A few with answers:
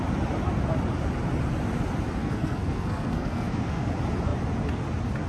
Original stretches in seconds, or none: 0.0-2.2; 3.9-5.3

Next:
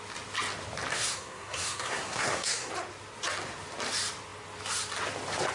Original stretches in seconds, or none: 0.0-0.9; 2.7-5.5